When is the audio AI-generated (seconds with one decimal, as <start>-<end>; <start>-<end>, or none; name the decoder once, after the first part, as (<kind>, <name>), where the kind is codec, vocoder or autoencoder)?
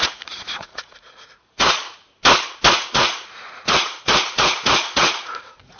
0.0-1.8 (vocoder, Vocos); 2.7-5.8